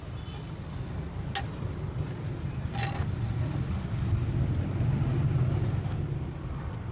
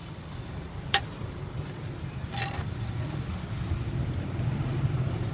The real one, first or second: first